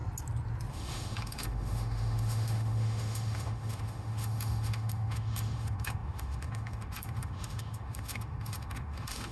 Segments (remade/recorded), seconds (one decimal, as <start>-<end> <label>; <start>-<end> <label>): 0.0-0.7 recorded; 0.7-9.3 remade